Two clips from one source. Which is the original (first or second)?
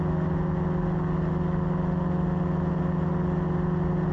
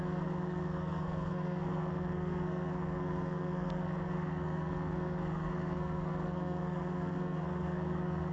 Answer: first